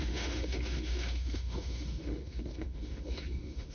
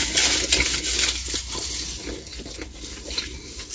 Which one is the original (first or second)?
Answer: second